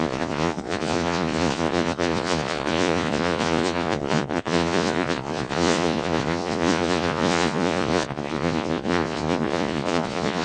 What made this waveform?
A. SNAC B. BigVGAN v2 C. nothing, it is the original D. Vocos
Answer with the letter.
D